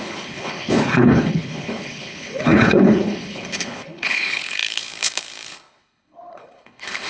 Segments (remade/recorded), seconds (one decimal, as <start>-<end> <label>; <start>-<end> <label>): 0.0-7.1 remade